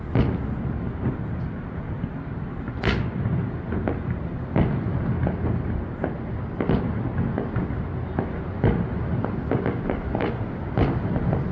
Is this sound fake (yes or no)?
no